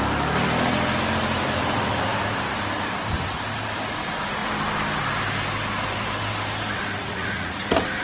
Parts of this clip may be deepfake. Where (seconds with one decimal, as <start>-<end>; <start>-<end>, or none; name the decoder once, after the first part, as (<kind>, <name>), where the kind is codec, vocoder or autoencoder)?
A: 7.0-7.6 (vocoder, Vocos)